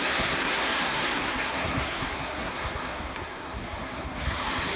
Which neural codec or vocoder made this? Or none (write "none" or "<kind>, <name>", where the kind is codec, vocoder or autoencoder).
codec, SNAC